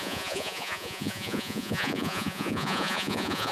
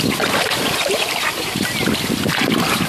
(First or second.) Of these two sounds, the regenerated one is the first